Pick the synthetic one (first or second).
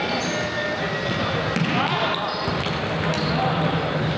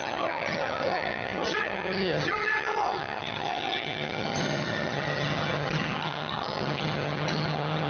second